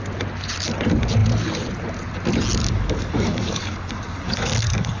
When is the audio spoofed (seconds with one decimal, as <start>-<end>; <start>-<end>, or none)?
2.6-5.0